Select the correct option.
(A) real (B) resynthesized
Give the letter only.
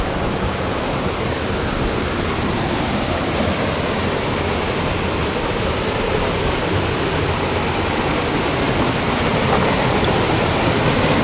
A